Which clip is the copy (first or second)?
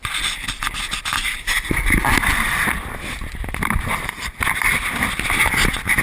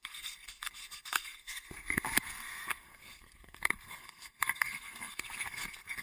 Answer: second